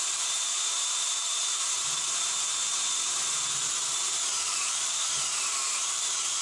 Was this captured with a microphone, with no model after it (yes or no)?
no